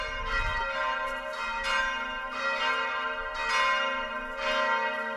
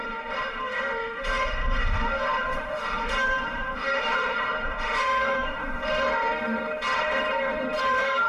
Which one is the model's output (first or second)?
second